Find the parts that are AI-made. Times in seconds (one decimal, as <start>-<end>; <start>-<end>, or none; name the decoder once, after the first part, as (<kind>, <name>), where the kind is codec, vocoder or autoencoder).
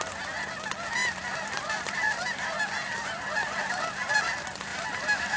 1.0-4.2 (vocoder, BigVGAN v2); 4.7-5.4